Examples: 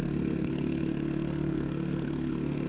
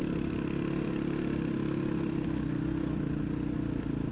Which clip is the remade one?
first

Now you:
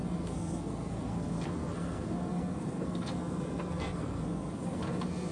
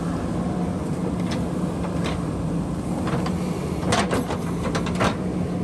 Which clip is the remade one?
first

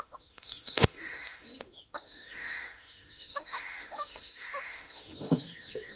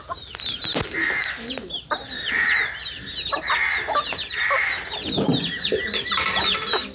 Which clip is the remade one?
first